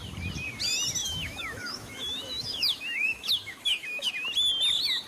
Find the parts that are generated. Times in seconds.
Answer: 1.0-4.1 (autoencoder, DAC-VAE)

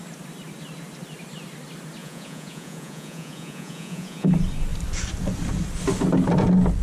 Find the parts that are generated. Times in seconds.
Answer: 2.0-4.3 (vocoder, Vocos)

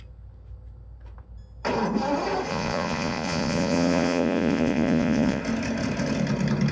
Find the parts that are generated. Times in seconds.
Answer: 2.5-5.4 (vocoder, Vocos)

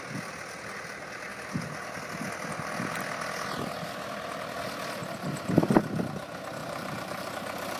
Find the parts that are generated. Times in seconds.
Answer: 6.6-7.3 (vocoder, BigVGAN v2)

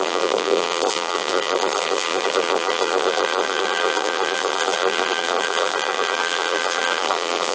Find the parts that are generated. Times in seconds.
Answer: 0.0-7.5 (vocoder, BigVGAN v2)

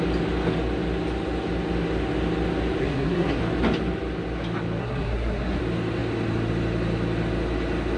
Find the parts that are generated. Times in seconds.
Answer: 2.8-3.4 (codec, SNAC); 4.8-5.6

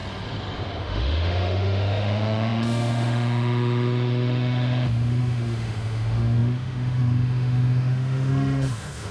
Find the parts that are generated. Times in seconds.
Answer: 0.8-9.1 (autoencoder, DAC-VAE)

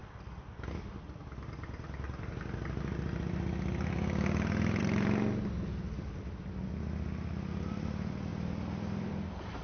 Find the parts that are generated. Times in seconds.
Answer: none